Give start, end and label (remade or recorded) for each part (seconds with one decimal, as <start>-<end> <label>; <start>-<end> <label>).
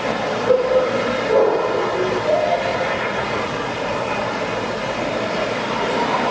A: 0.0-2.7 recorded; 2.7-4.4 remade; 4.4-6.3 recorded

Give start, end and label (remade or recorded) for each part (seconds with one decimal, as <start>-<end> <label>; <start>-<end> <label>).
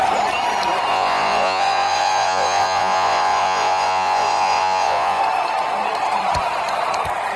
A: 0.0-0.9 recorded; 0.9-5.2 remade; 5.2-7.4 recorded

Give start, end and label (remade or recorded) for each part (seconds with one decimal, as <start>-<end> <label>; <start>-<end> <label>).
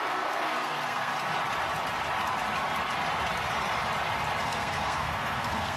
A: 0.0-1.1 remade; 1.1-4.4 recorded; 4.4-5.8 remade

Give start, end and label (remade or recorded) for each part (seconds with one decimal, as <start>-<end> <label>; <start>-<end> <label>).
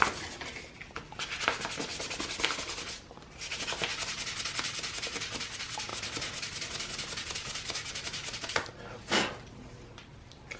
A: 0.0-10.6 recorded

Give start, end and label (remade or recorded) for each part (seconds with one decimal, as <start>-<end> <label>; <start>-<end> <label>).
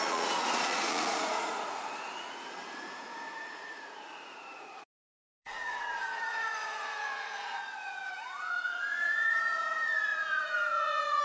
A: 0.0-11.2 remade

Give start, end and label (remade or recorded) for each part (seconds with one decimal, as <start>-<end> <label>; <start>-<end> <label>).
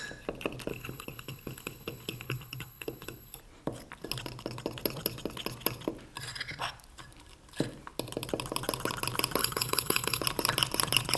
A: 0.0-0.7 recorded; 0.7-3.4 remade; 3.4-9.4 recorded; 9.4-10.2 remade; 10.2-11.2 recorded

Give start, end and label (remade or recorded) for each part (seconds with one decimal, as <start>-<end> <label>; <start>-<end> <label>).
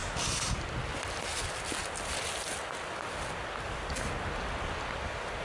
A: 0.0-5.4 recorded